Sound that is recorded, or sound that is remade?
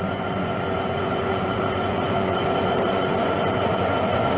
remade